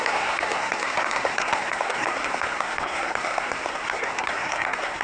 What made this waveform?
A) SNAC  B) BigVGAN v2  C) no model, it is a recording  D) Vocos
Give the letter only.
A